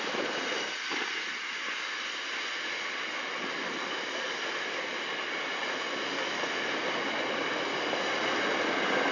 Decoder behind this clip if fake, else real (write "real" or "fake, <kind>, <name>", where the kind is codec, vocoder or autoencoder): real